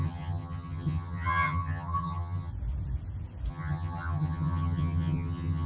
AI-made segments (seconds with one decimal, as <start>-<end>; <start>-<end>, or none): 0.0-2.5; 3.5-5.7